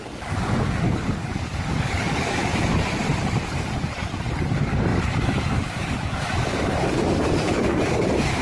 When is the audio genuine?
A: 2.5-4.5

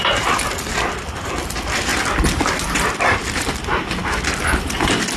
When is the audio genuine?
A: 0.0-5.2